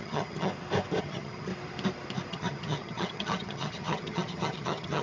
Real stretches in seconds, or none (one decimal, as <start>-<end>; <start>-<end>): 0.5-1.0; 1.5-2.3